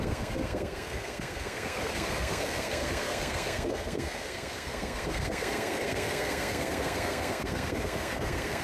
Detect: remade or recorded remade